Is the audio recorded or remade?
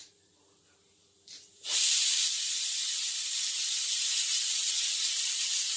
remade